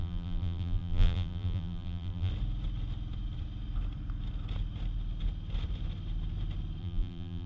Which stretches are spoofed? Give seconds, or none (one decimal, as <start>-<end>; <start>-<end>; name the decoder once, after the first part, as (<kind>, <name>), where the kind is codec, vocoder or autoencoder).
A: 0.0-2.3 (vocoder, BigVGAN v2); 6.8-7.5